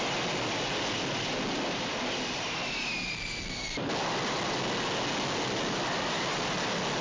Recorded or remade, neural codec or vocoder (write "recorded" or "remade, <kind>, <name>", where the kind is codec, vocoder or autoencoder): recorded